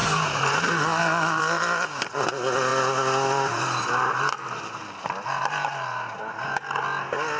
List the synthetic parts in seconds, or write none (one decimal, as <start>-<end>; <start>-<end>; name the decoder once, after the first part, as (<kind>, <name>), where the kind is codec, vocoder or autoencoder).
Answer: none